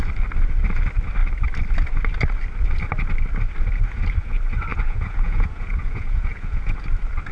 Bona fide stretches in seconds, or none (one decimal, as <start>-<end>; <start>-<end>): 0.0-4.7; 6.8-7.3

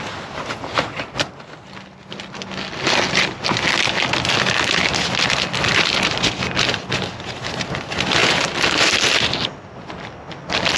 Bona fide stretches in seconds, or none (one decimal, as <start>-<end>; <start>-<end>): 0.0-10.8